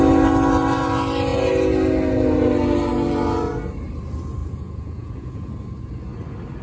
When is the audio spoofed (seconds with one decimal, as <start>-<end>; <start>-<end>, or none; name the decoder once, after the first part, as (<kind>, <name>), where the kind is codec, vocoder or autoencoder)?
4.4-5.5 (vocoder, Vocos)